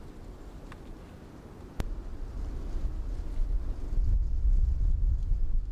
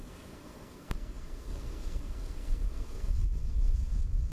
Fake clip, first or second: second